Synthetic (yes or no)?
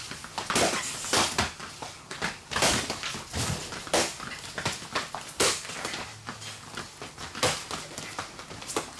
no